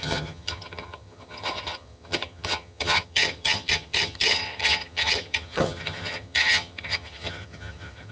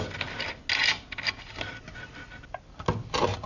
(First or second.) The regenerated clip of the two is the first